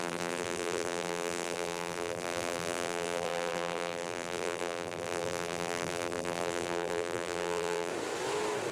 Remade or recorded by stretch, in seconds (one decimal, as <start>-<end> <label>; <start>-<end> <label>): 0.0-7.9 remade; 7.9-8.7 recorded